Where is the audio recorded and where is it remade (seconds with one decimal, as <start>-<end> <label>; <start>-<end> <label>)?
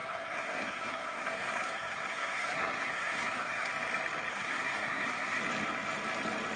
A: 0.0-3.7 remade; 3.7-4.3 recorded; 4.3-5.4 remade; 5.4-6.6 recorded